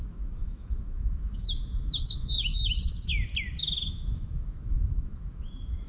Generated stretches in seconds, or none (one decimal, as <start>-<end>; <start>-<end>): 0.0-3.1; 3.6-5.9